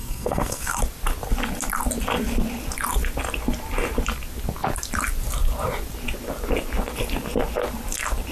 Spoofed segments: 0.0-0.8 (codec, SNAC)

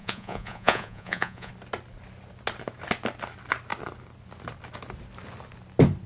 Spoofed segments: 0.0-1.5 (vocoder, Vocos)

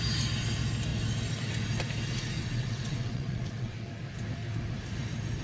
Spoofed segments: 2.4-3.9 (vocoder, WaveNeXt)

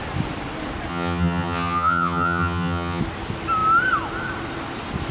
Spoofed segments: 0.9-3.0 (vocoder, HiFi-GAN)

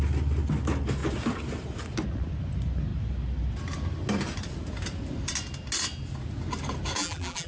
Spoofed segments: 7.0-7.5 (vocoder, BigVGAN v2)